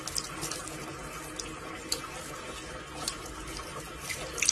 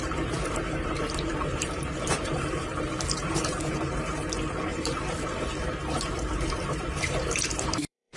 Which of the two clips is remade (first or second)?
second